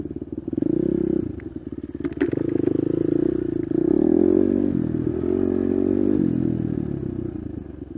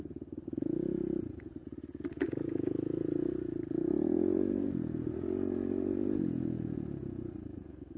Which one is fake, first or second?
second